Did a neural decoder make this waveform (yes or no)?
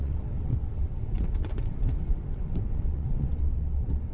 yes